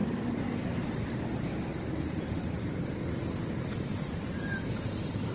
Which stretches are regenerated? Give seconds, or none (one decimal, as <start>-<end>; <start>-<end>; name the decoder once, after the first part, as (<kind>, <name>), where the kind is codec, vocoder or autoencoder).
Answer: 0.0-1.2 (vocoder, BigVGAN v2); 1.7-5.3